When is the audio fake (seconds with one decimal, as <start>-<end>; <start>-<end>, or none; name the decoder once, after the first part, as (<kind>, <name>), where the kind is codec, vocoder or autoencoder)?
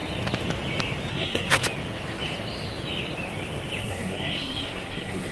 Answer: 1.1-1.6 (codec, SNAC); 3.8-5.3